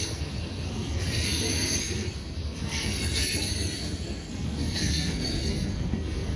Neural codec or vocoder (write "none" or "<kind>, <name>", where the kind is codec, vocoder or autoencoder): codec, SNAC